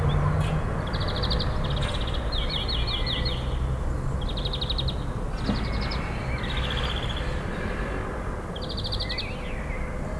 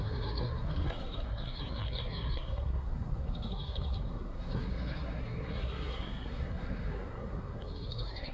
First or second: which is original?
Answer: first